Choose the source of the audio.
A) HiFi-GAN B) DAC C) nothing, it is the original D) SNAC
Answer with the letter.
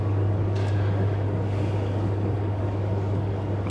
B